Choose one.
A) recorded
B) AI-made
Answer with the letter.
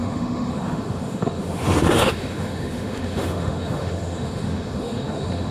B